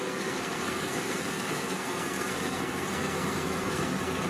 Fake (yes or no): yes